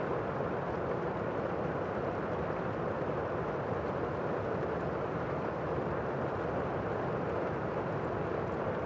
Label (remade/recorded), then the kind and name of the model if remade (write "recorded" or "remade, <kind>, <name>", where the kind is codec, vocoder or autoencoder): recorded